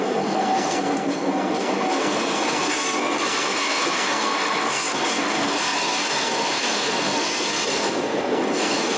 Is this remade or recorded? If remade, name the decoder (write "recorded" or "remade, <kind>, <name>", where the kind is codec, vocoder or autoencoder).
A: remade, codec, SNAC